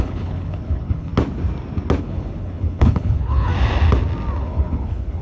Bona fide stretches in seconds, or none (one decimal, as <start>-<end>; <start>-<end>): 1.1-2.0; 3.5-4.4